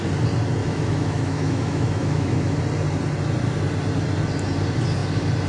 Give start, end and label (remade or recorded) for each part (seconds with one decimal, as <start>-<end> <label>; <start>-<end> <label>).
0.0-0.6 recorded; 0.6-2.6 remade; 2.6-5.5 recorded